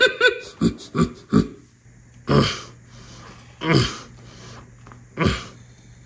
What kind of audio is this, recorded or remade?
recorded